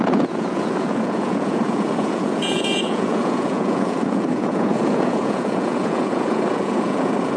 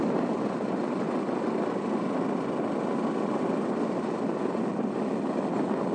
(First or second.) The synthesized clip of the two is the first